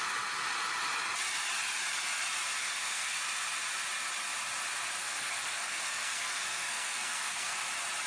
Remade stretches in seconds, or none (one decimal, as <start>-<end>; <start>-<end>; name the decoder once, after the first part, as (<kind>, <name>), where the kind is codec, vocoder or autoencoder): 2.6-3.2 (codec, SNAC); 5.0-7.6